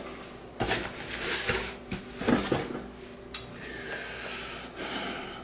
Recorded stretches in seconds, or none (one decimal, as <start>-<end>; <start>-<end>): 0.0-5.4